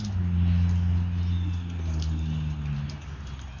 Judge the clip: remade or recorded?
recorded